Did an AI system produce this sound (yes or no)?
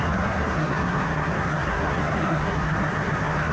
yes